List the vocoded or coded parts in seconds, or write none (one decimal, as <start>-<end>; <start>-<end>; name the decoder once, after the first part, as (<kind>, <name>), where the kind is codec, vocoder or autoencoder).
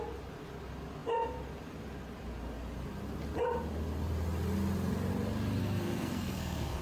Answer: 5.6-6.8 (codec, SNAC)